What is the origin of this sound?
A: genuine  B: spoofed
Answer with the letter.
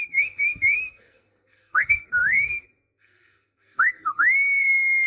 B